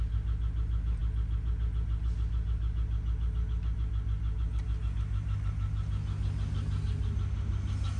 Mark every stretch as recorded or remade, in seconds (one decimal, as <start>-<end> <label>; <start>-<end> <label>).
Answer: 0.0-8.0 recorded